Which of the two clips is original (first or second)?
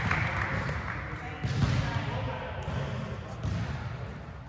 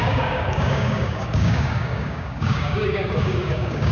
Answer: first